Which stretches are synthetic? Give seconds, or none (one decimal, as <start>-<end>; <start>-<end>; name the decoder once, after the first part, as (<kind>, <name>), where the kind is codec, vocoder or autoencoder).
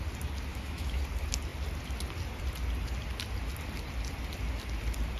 0.5-1.0 (autoencoder, DAC-VAE)